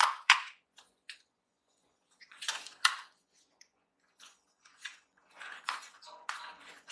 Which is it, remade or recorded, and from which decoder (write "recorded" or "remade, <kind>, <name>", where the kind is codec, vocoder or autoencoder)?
remade, vocoder, Vocos